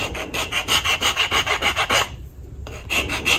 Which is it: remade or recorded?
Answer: recorded